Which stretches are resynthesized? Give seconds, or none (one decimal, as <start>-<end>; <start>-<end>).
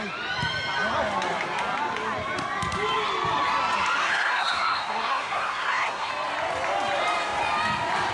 4.0-6.1